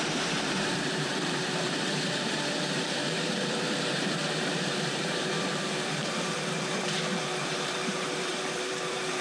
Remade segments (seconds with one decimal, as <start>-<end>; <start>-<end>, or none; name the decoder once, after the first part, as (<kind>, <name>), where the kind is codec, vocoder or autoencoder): 0.0-9.2 (vocoder, BigVGAN v2)